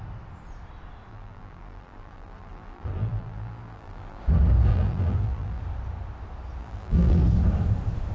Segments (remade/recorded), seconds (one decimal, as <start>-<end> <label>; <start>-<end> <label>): 0.0-1.1 recorded; 1.1-4.2 remade; 4.2-4.7 recorded; 4.7-5.6 remade; 5.6-6.6 recorded; 6.6-7.2 remade; 7.2-8.1 recorded